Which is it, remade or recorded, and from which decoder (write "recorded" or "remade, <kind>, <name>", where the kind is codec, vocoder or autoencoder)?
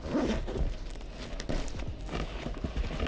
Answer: recorded